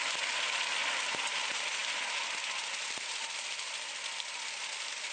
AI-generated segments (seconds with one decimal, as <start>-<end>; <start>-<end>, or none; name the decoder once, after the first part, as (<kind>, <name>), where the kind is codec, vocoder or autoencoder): none